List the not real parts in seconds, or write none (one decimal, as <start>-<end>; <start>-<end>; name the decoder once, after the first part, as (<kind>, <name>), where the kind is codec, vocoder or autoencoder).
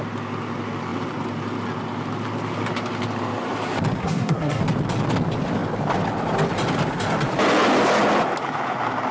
4.0-4.6 (codec, SNAC)